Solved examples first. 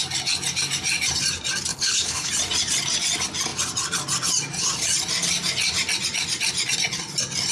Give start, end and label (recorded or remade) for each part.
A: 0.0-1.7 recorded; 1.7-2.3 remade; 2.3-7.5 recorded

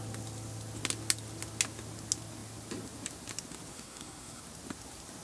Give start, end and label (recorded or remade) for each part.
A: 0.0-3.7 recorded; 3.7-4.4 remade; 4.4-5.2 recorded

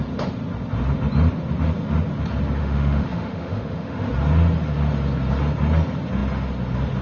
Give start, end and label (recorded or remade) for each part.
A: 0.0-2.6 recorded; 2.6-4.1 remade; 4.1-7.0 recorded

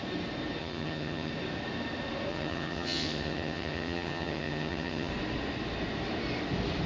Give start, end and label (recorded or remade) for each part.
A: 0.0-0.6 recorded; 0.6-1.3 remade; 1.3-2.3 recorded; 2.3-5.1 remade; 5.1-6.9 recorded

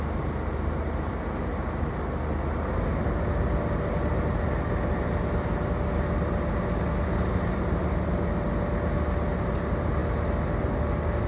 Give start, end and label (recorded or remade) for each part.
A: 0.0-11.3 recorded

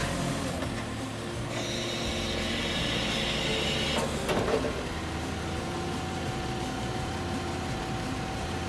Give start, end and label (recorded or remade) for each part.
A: 0.0-4.4 recorded; 4.4-8.7 remade

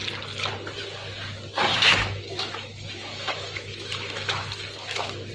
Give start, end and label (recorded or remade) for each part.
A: 0.0-1.7 recorded; 1.7-5.3 remade

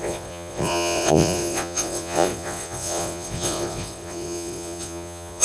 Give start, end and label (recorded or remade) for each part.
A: 0.0-5.4 remade